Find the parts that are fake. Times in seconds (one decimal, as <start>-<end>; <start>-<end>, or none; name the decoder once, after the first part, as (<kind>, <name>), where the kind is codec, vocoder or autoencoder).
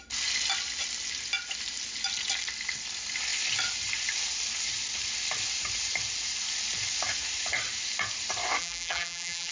8.6-9.5 (vocoder, BigVGAN v2)